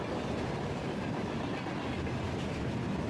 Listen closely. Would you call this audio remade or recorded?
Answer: recorded